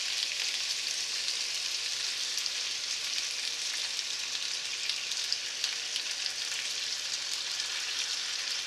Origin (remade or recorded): recorded